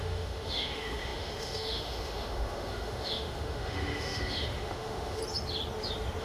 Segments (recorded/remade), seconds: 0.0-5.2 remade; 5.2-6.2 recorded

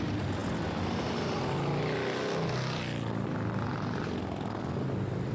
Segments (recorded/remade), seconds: 0.0-5.3 recorded

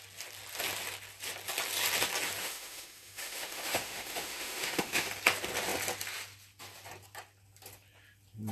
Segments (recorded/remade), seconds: 0.0-2.4 recorded; 2.4-5.1 remade; 5.1-8.5 recorded

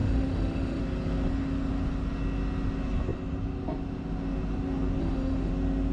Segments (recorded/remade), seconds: 0.0-0.8 remade; 0.8-5.0 recorded; 5.0-5.5 remade; 5.5-5.9 recorded

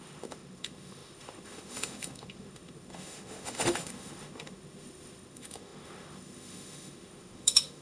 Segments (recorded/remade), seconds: 0.0-7.8 remade

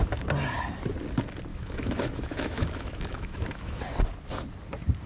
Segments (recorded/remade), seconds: 0.0-1.5 recorded; 1.5-3.8 remade; 3.8-5.1 recorded

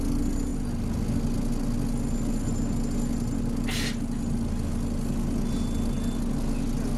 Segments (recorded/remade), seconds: 0.0-7.0 recorded